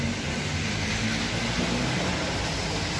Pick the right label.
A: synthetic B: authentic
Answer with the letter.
B